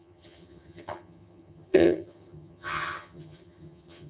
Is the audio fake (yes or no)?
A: yes